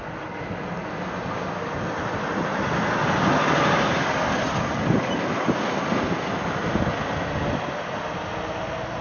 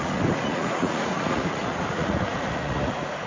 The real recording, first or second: first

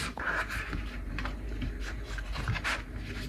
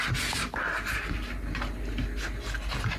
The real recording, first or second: second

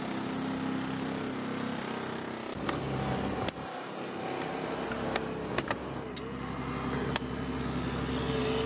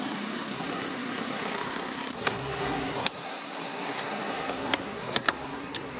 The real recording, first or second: first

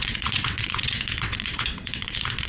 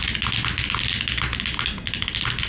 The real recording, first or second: second